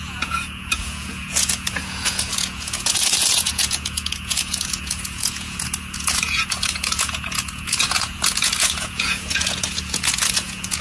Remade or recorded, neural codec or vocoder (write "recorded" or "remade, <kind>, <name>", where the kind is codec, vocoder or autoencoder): remade, vocoder, Vocos